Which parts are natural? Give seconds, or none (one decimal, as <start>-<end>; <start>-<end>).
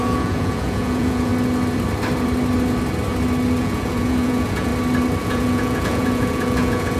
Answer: 1.3-3.6; 4.7-5.2